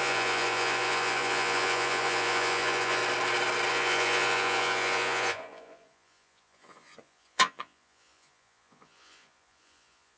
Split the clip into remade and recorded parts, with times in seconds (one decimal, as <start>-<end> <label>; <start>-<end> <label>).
0.0-3.0 remade; 3.0-3.7 recorded; 3.7-10.2 remade